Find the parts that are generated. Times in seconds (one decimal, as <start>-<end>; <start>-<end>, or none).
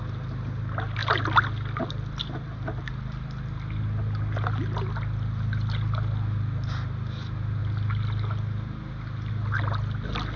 none